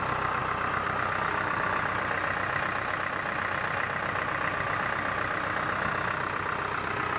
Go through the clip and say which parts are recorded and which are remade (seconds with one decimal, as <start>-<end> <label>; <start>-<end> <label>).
0.0-7.2 recorded